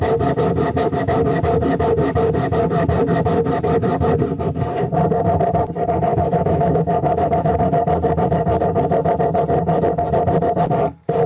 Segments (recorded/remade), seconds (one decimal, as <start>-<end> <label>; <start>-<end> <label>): 0.0-6.1 recorded; 6.1-7.6 remade; 7.6-11.3 recorded